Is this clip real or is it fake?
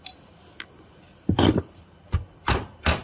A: real